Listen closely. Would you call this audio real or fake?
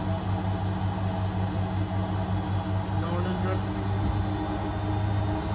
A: real